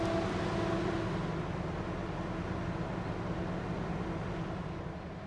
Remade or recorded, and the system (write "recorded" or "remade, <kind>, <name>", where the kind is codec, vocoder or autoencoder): recorded